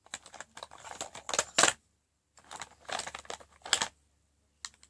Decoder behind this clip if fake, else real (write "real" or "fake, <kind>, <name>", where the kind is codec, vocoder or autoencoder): real